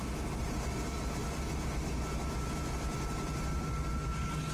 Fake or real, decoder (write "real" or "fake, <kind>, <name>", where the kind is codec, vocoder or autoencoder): real